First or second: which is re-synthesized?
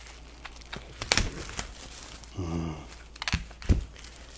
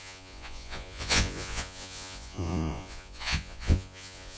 second